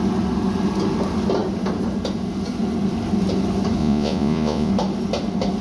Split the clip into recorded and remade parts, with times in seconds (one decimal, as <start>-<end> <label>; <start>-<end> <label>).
0.0-3.8 recorded; 3.8-4.7 remade; 4.7-5.6 recorded